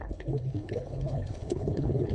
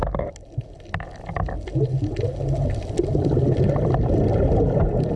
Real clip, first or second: second